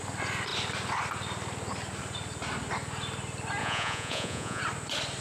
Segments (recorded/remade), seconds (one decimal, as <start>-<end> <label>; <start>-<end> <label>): 0.0-3.6 recorded; 3.6-4.6 remade; 4.6-5.2 recorded